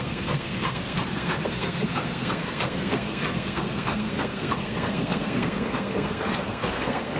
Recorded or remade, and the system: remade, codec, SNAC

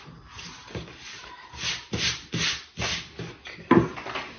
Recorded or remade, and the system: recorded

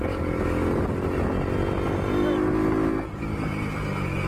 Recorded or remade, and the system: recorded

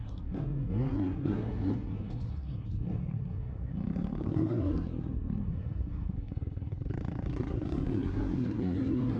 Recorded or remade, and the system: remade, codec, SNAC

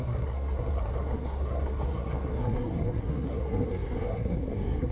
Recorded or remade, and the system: remade, codec, SNAC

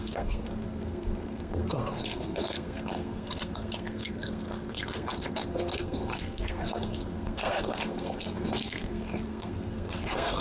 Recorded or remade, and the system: remade, codec, SNAC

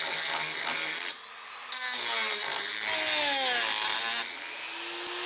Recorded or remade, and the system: recorded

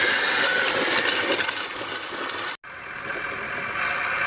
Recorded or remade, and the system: recorded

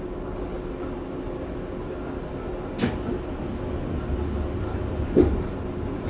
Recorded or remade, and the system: recorded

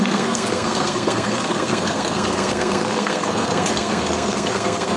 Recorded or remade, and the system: remade, codec, SNAC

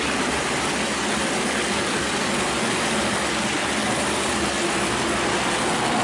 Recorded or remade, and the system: recorded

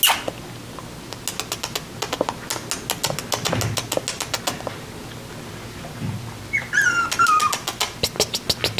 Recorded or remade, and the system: recorded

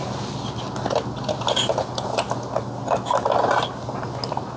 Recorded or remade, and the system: recorded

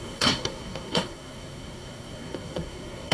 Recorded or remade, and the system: remade, codec, SNAC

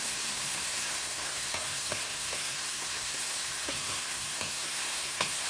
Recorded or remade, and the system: remade, codec, SNAC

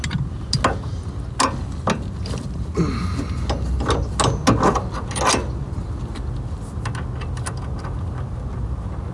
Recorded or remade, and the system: recorded